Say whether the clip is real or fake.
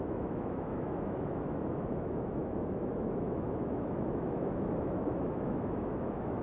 fake